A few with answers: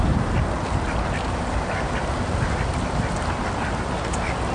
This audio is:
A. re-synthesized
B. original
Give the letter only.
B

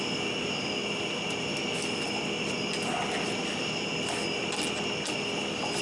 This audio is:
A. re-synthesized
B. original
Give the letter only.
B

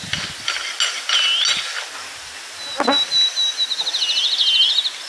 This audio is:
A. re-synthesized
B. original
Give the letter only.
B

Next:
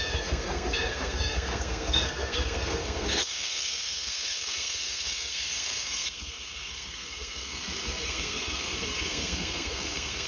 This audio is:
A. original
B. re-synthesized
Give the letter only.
B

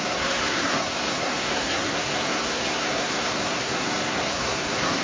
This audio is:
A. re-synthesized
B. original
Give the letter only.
A